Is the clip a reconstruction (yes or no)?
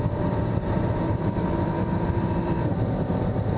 yes